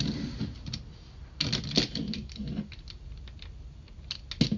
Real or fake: real